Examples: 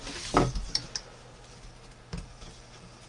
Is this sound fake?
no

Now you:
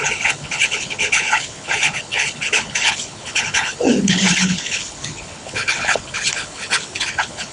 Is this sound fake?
yes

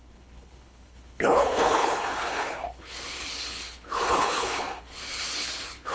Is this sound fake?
yes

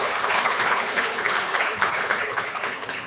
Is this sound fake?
yes